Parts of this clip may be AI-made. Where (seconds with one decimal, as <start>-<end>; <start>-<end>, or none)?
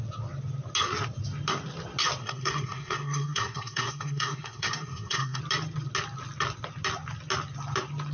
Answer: 2.2-5.4